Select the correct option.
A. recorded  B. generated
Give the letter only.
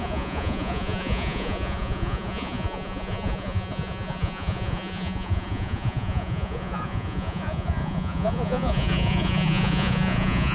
B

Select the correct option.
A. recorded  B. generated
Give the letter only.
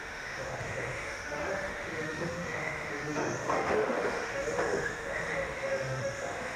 B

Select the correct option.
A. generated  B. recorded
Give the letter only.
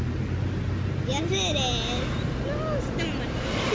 B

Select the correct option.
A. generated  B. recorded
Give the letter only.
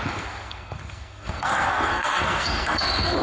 A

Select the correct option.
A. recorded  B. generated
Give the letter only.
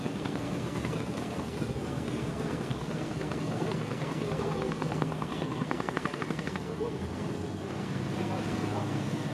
B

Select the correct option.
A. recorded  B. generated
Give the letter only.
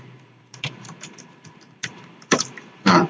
B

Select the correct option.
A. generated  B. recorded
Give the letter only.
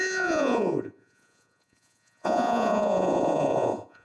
A